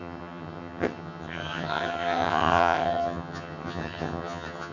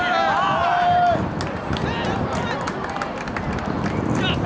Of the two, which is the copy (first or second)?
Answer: first